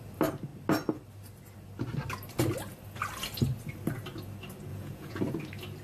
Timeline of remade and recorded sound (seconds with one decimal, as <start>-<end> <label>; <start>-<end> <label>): 0.0-4.7 recorded; 4.7-5.2 remade; 5.2-5.8 recorded

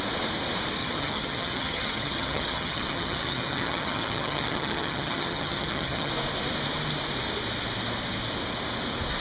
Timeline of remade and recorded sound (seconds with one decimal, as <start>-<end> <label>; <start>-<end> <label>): 0.0-0.8 recorded; 0.8-6.1 remade; 6.1-9.2 recorded

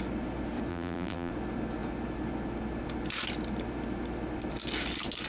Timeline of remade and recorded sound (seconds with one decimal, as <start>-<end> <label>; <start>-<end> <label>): 0.0-0.7 recorded; 0.7-1.3 remade; 1.3-5.3 recorded

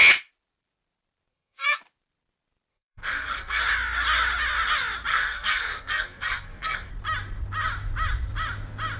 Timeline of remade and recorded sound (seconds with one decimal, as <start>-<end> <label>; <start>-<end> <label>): 0.0-1.3 recorded; 1.3-1.8 remade; 1.8-2.7 recorded; 2.7-3.6 remade; 3.6-5.1 recorded; 5.1-6.9 remade; 6.9-9.0 recorded

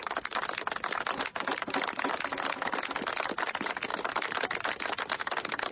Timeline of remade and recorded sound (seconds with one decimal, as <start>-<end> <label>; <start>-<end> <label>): 0.0-5.7 recorded

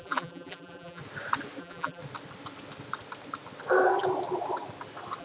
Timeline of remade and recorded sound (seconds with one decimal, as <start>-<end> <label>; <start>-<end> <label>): 0.0-1.0 remade; 1.0-1.6 recorded; 1.6-2.0 remade; 2.0-5.2 recorded

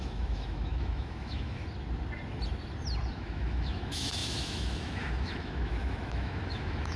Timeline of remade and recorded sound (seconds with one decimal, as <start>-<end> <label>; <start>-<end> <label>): 0.0-1.6 remade; 1.6-3.1 recorded; 3.1-7.0 remade